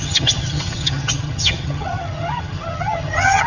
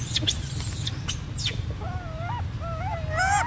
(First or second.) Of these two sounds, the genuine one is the second